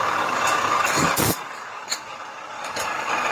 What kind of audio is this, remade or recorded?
remade